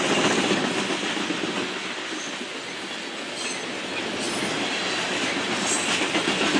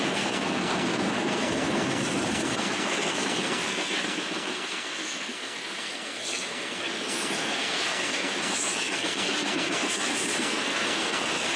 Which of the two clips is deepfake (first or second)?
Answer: second